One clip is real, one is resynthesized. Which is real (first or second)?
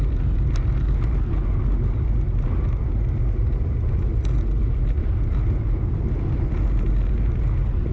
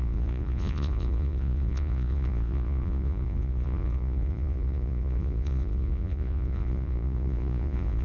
first